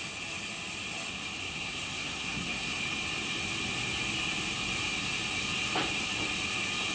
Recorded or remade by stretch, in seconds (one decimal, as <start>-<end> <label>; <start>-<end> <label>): 0.0-1.4 recorded; 1.4-2.8 remade; 2.8-6.9 recorded